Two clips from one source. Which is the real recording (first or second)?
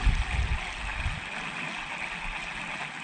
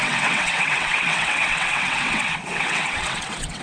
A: first